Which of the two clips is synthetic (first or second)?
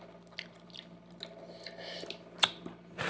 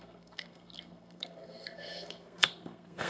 second